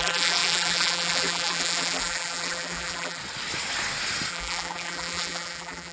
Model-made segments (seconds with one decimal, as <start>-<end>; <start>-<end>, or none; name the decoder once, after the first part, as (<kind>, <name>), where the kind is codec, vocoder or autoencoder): 0.0-3.2 (vocoder, BigVGAN v2); 4.3-5.9